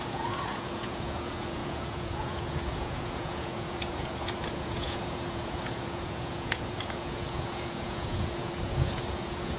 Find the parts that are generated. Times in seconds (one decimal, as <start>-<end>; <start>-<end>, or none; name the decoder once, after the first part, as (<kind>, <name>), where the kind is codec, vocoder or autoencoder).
0.0-9.6 (vocoder, Vocos)